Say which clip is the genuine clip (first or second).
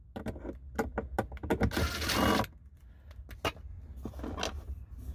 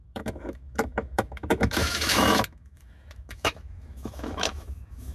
first